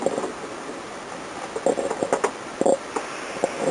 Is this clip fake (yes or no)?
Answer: no